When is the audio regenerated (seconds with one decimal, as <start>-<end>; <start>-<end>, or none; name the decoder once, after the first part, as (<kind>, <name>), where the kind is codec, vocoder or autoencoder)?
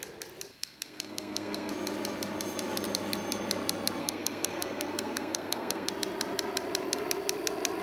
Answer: 0.5-1.7 (codec, SNAC); 4.0-5.9